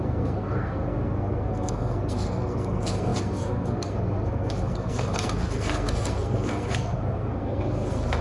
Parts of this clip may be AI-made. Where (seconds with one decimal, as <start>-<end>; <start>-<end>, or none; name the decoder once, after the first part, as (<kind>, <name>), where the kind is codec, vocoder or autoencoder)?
0.0-8.2 (codec, SNAC)